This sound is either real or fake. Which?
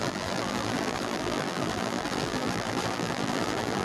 fake